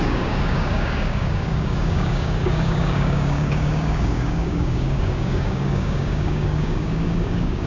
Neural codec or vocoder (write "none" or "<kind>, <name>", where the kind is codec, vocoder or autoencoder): codec, DAC